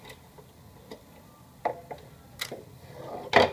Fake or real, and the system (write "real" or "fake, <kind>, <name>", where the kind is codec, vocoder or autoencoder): real